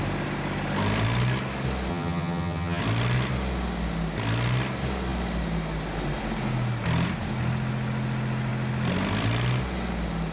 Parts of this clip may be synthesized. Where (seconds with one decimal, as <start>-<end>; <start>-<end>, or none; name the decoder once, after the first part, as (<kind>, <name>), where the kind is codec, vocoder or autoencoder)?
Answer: 1.9-2.8 (vocoder, HiFi-GAN)